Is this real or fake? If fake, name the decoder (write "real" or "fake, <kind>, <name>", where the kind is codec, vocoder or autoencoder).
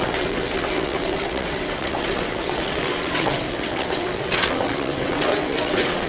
fake, vocoder, WaveNeXt